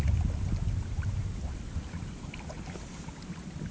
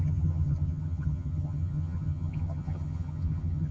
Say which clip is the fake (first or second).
second